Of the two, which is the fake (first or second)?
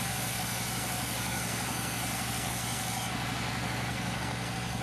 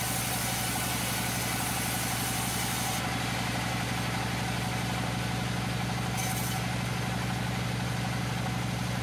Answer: first